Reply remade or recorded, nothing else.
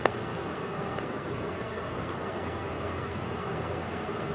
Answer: remade